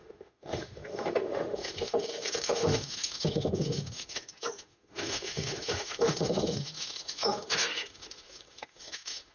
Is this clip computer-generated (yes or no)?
yes